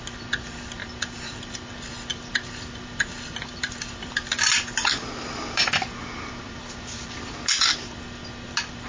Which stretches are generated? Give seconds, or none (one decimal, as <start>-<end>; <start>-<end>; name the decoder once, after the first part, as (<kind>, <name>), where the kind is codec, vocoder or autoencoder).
0.8-1.7 (vocoder, BigVGAN v2); 2.1-4.2; 6.0-7.1